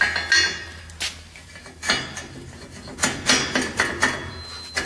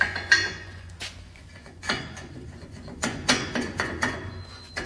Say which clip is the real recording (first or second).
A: first